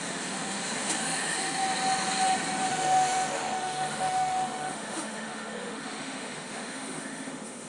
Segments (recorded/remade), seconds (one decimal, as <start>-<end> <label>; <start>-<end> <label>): 0.0-1.6 remade; 1.6-2.7 recorded; 2.7-7.7 remade